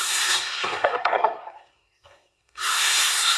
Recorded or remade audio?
remade